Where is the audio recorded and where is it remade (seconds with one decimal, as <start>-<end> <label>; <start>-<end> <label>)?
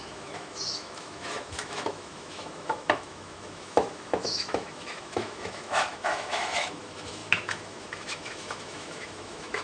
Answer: 0.0-9.6 remade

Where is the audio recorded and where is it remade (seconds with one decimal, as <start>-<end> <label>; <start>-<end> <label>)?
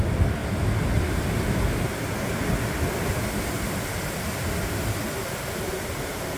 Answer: 0.0-6.4 recorded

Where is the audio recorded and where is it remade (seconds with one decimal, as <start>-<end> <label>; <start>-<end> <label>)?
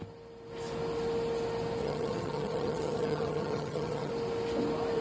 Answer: 0.0-1.8 recorded; 1.8-4.1 remade; 4.1-5.0 recorded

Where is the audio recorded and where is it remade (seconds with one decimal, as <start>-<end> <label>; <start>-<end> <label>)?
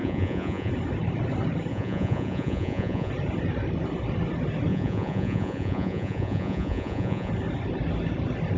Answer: 0.0-0.7 remade; 0.7-1.7 recorded; 1.7-3.1 remade; 3.1-4.7 recorded; 4.7-7.3 remade; 7.3-8.6 recorded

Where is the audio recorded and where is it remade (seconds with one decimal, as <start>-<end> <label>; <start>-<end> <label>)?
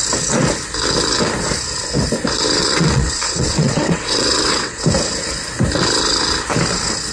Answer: 0.0-2.6 recorded; 2.6-4.8 remade; 4.8-7.1 recorded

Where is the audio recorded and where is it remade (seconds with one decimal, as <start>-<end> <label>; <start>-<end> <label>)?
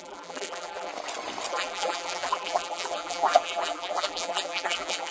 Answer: 0.0-0.9 remade; 0.9-1.5 recorded; 1.5-5.1 remade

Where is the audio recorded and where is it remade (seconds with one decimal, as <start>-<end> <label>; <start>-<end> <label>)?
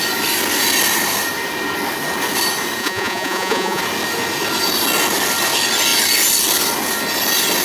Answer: 0.0-2.8 recorded; 2.8-3.8 remade; 3.8-7.6 recorded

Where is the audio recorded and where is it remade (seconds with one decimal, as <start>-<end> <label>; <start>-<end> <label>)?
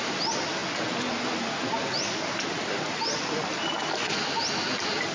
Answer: 0.0-5.1 recorded